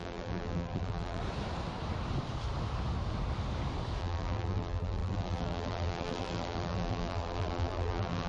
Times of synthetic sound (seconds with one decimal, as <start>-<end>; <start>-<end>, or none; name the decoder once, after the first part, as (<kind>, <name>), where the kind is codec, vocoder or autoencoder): 0.0-1.2 (vocoder, BigVGAN v2); 4.0-8.3